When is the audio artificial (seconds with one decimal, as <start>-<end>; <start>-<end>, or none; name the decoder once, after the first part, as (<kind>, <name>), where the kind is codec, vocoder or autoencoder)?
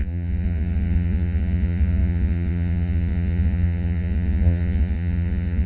0.0-5.7 (vocoder, Vocos)